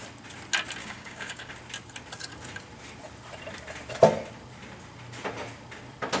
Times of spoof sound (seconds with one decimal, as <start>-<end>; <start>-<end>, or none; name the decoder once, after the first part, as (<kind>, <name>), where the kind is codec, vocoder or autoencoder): 0.8-1.5 (codec, DAC)